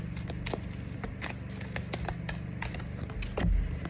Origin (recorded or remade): recorded